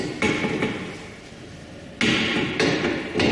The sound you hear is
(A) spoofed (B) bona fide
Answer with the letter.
B